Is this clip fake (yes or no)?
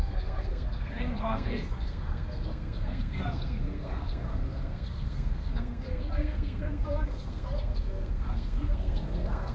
yes